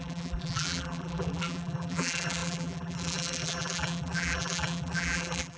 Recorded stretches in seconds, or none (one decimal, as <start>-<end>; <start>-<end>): none